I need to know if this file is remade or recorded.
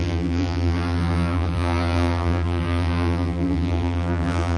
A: remade